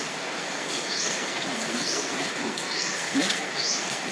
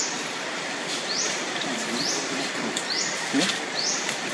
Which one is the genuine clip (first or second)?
second